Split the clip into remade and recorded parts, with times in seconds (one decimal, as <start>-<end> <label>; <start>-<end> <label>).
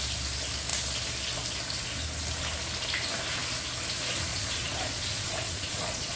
0.0-4.3 recorded; 4.3-6.2 remade